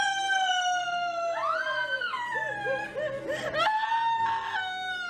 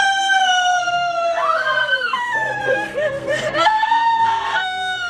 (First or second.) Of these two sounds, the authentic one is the first